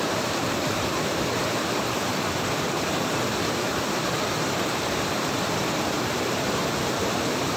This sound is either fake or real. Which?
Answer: fake